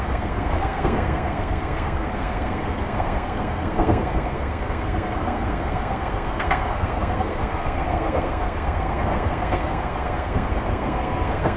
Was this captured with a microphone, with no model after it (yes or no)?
no